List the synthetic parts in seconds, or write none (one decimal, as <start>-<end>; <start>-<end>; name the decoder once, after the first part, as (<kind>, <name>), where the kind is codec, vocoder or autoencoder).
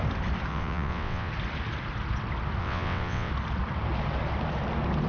0.5-1.3 (vocoder, WaveNeXt); 2.6-3.3